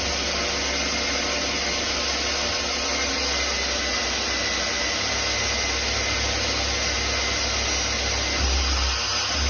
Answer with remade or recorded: recorded